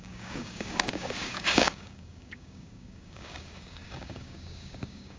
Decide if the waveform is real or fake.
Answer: fake